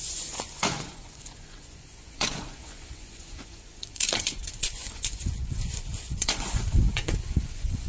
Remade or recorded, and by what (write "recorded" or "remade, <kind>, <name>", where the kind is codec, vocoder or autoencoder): remade, vocoder, Vocos